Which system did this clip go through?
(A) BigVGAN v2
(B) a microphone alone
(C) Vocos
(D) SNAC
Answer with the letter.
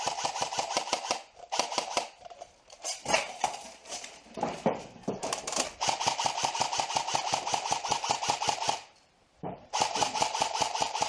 A